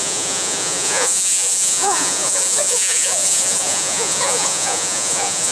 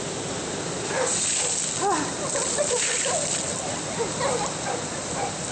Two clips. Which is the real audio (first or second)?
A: second